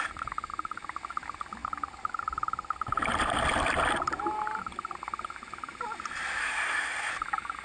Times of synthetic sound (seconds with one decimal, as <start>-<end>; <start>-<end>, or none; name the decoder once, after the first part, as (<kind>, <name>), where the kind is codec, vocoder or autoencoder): 6.4-7.1 (codec, SNAC)